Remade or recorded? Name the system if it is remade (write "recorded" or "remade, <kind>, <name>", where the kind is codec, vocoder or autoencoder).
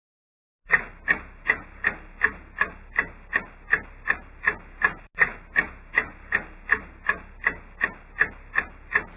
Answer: recorded